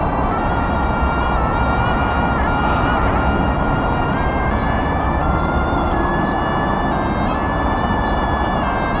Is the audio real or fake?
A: real